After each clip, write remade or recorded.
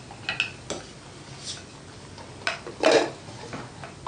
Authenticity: recorded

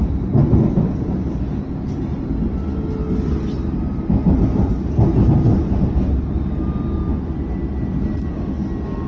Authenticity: recorded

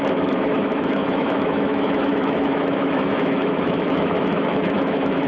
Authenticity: remade